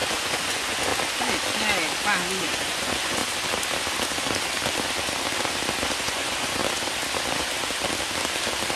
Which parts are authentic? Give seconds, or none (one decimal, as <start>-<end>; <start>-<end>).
0.9-2.4; 3.2-6.0; 6.6-8.8